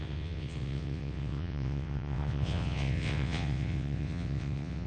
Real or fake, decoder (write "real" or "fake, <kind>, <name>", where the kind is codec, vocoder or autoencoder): fake, vocoder, WaveNeXt